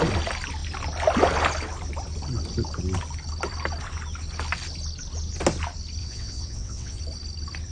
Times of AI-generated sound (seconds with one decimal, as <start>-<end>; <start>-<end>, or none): 6.0-7.0